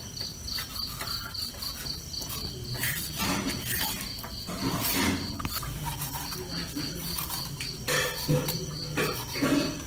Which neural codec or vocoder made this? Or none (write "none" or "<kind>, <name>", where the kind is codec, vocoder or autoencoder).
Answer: none